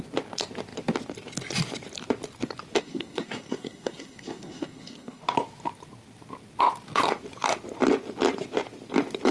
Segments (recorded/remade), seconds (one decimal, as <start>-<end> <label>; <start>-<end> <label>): 0.0-2.8 recorded; 2.8-5.2 remade; 5.2-9.3 recorded